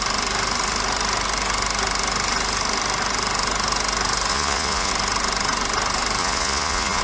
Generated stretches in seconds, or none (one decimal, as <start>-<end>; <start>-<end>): 4.3-4.9; 6.2-7.0